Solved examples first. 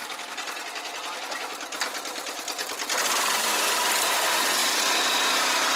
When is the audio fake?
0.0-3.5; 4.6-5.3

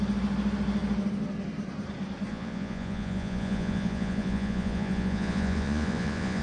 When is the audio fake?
2.3-6.4

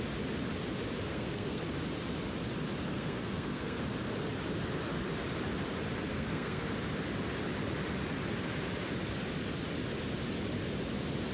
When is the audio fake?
1.1-1.6; 2.9-3.8; 6.1-6.7

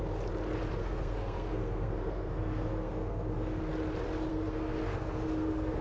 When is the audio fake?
0.8-3.6; 4.3-5.8

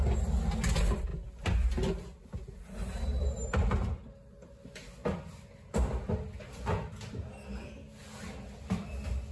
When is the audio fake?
none